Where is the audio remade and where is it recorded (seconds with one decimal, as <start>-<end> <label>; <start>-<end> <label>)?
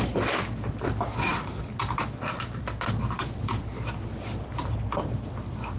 0.0-5.8 recorded